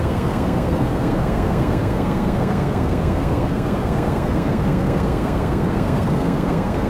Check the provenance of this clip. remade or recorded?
remade